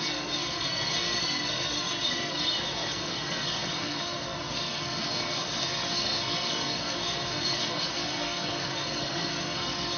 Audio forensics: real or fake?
fake